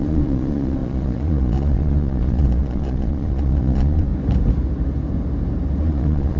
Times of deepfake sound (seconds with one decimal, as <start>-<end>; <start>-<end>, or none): 0.0-4.1; 5.8-6.4